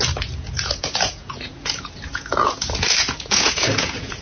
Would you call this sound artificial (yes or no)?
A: yes